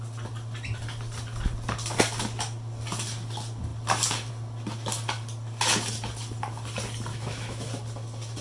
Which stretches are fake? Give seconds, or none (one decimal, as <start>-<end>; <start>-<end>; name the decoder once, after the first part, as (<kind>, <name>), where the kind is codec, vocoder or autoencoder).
7.1-7.7 (autoencoder, DAC-VAE)